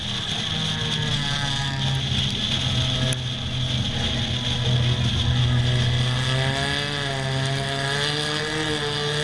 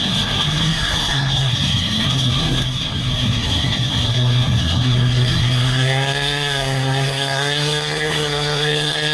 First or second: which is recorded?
first